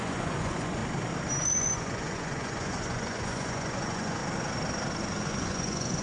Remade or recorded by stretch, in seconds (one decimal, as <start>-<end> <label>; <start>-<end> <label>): 0.0-0.8 remade; 0.8-1.4 recorded; 1.4-4.2 remade; 4.2-5.2 recorded; 5.2-6.0 remade